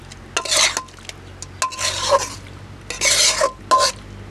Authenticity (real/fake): real